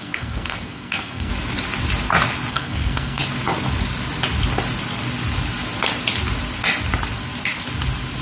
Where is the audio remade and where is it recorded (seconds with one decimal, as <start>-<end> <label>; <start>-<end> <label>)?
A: 0.0-1.3 remade; 1.3-2.5 recorded; 2.5-3.2 remade; 3.2-8.2 recorded